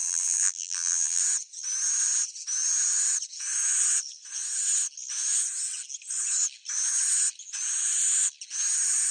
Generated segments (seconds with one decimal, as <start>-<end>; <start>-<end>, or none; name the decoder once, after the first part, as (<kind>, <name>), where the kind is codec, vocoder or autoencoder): 0.0-1.2 (vocoder, BigVGAN v2)